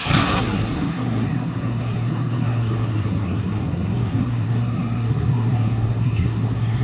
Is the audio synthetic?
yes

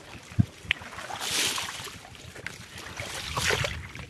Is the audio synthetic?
no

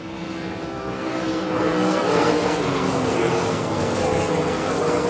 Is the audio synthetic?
yes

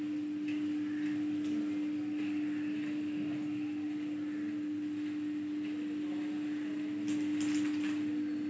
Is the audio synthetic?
no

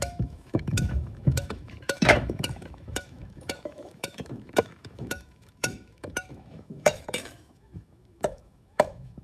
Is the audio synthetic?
yes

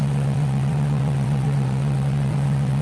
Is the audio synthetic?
yes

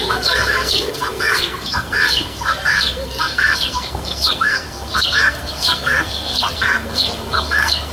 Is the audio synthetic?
yes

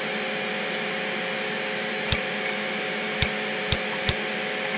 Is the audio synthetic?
no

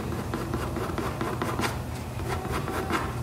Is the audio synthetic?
no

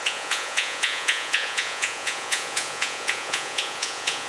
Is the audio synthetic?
yes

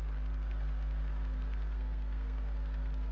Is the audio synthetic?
yes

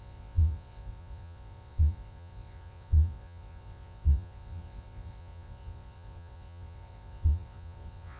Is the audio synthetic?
yes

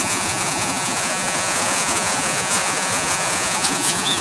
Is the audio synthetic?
yes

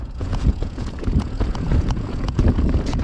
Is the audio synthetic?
yes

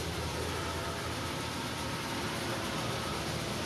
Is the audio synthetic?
no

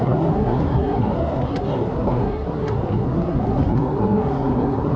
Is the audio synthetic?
yes